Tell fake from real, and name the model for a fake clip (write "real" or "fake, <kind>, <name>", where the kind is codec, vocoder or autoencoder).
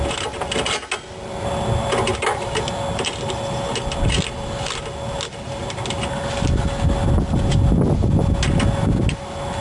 real